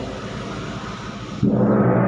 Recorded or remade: recorded